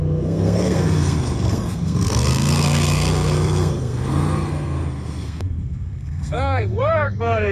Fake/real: fake